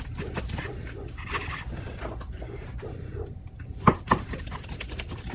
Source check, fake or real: real